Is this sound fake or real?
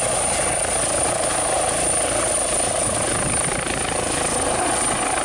real